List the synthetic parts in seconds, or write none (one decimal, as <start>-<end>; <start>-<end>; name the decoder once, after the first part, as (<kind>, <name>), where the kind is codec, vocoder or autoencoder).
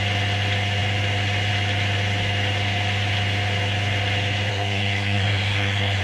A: 4.5-6.0 (codec, SNAC)